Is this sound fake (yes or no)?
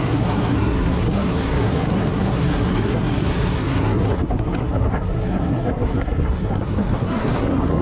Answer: yes